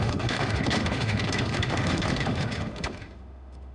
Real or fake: fake